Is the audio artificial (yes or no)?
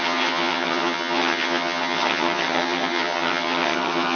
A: yes